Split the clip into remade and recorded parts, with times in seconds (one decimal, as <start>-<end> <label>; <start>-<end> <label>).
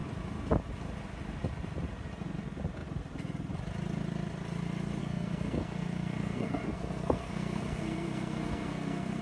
0.0-5.0 recorded; 5.0-9.2 remade